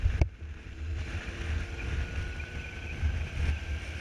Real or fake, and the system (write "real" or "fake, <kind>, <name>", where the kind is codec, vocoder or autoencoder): fake, vocoder, BigVGAN v2